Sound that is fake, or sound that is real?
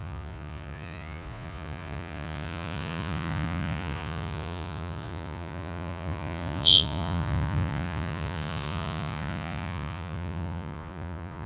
fake